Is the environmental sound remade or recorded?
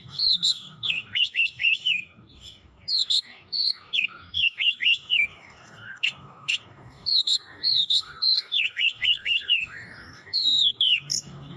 remade